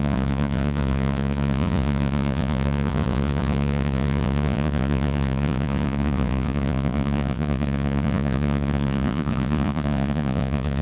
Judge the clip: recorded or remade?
remade